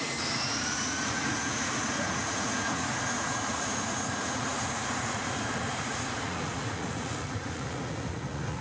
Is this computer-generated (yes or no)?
yes